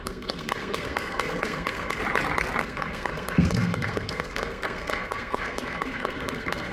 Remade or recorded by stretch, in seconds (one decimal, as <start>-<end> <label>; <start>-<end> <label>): 0.0-2.0 remade; 2.0-2.6 recorded; 2.6-6.7 remade